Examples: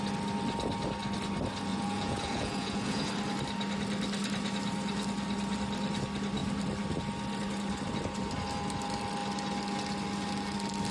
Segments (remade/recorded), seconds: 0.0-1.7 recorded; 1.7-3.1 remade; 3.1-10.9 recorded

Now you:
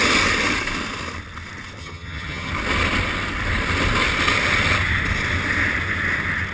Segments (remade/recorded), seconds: 0.0-1.8 recorded; 1.8-2.5 remade; 2.5-6.5 recorded